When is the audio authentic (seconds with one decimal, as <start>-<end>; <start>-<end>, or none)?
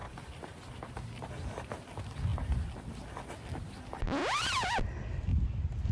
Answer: 1.3-5.9